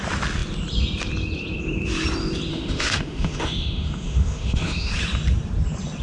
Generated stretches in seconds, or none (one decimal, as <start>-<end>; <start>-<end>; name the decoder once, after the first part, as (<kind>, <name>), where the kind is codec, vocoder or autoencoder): 2.5-4.9 (autoencoder, DAC-VAE)